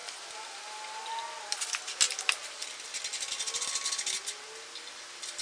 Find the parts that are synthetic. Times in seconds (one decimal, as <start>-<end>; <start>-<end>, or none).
none